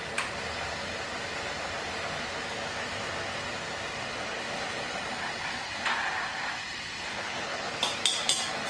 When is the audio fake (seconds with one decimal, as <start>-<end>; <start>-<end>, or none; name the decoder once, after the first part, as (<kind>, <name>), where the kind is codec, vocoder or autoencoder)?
7.1-7.7 (codec, HILCodec)